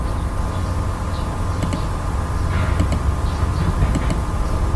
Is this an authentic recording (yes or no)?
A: yes